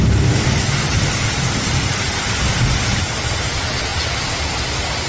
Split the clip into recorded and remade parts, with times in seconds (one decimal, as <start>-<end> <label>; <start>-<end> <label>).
0.0-5.1 recorded